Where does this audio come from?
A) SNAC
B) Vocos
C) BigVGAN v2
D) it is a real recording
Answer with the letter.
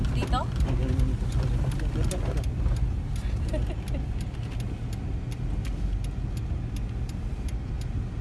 D